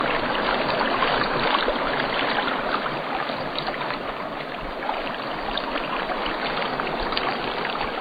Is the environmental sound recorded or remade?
remade